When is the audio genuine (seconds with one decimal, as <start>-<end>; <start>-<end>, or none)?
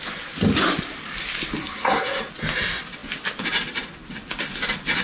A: 0.0-1.6; 2.3-5.0